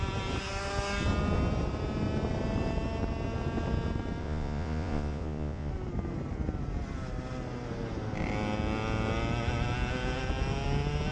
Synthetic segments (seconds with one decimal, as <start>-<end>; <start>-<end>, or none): 4.2-5.7